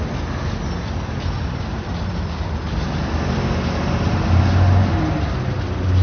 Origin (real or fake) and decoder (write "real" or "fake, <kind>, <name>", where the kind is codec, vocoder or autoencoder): real